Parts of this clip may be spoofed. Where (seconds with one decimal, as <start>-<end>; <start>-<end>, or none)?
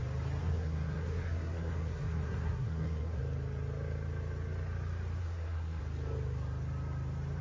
0.4-3.2; 5.2-5.8